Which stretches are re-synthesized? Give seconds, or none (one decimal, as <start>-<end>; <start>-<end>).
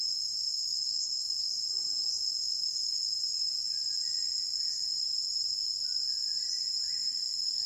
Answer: 0.5-1.4